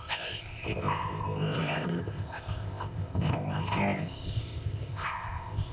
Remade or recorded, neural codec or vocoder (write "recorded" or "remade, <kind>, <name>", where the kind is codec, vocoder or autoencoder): remade, codec, ZipCodec